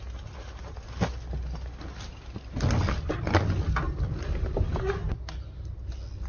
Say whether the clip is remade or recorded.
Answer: recorded